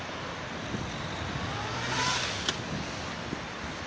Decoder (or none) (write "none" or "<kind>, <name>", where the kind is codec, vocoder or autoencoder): none